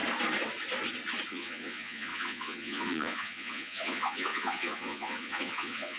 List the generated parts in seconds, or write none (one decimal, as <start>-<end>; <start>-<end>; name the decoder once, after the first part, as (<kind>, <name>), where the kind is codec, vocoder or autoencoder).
1.3-6.0 (vocoder, Vocos)